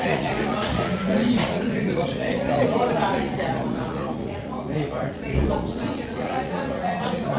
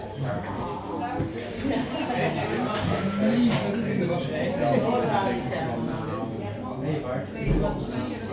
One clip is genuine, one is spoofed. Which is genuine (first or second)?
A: second